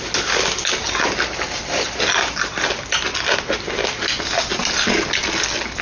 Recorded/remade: recorded